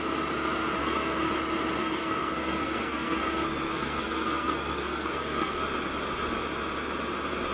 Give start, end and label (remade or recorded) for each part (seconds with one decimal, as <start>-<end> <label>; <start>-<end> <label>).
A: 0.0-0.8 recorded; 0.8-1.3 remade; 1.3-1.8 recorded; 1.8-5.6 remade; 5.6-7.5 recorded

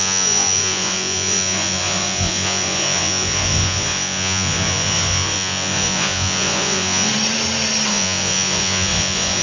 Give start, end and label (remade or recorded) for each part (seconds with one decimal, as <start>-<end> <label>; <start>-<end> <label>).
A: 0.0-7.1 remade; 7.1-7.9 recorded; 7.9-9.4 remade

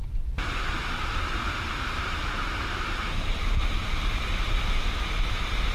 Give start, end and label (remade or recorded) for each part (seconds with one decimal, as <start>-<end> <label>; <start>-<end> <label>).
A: 0.0-3.4 remade; 3.4-5.7 recorded

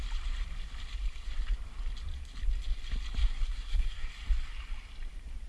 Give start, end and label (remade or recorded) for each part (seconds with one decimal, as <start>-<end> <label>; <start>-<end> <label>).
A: 0.0-3.2 recorded; 3.2-4.1 remade; 4.1-5.5 recorded